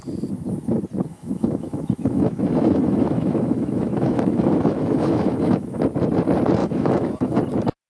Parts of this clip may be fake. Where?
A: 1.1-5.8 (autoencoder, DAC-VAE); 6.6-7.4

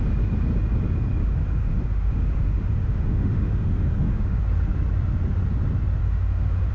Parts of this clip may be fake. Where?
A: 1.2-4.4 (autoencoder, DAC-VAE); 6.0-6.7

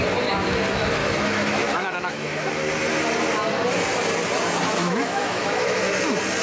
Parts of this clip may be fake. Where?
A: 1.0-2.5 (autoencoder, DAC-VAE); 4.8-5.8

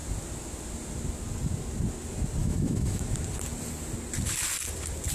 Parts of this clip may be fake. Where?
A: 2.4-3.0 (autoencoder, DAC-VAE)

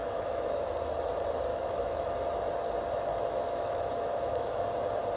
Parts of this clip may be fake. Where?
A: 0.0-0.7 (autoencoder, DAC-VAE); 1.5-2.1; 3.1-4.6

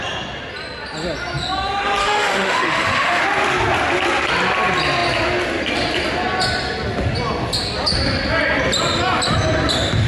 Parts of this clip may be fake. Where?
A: 2.0-3.2 (autoencoder, DAC-VAE)

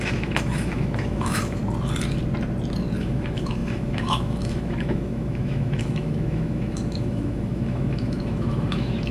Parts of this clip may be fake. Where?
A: 0.0-1.6 (autoencoder, DAC-VAE); 3.0-9.1